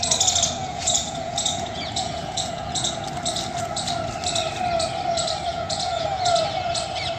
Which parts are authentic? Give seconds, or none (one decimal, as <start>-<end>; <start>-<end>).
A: 0.0-0.6; 2.9-5.5; 6.4-7.2